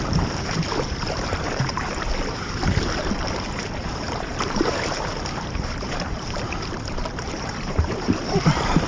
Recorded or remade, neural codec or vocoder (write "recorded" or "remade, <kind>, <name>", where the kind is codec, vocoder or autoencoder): remade, vocoder, BigVGAN v2